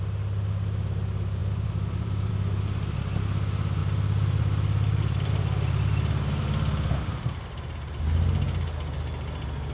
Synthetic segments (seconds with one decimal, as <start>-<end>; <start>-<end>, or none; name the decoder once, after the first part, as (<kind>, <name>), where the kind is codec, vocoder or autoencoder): 1.4-2.3 (vocoder, BigVGAN v2); 3.8-8.0